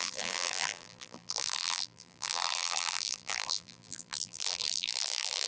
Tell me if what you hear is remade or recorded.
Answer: remade